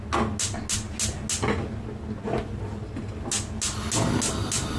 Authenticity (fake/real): real